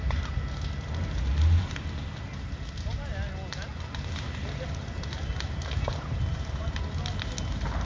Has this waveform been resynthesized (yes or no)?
no